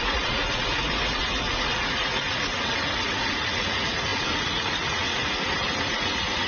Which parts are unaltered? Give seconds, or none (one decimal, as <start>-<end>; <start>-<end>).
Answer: none